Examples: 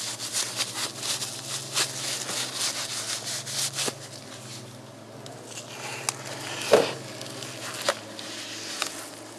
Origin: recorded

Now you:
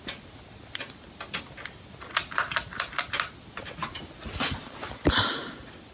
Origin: recorded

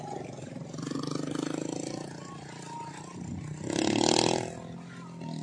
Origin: recorded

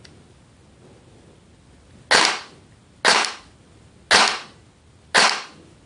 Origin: recorded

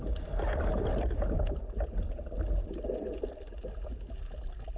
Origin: recorded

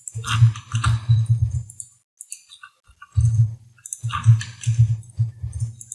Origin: recorded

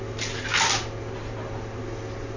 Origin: recorded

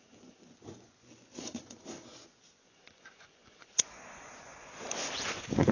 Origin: remade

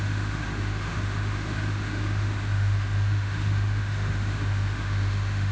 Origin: remade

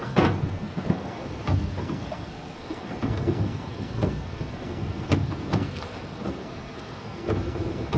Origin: remade